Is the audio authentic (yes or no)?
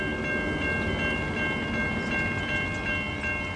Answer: yes